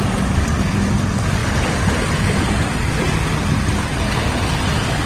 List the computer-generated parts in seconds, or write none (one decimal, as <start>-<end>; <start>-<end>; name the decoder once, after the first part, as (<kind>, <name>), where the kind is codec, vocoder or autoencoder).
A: none